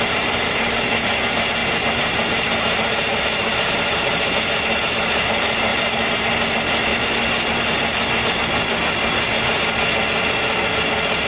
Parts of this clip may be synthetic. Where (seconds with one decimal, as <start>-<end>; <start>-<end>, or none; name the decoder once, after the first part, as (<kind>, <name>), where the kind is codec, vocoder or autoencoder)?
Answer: 1.6-4.3 (vocoder, BigVGAN v2); 5.7-6.4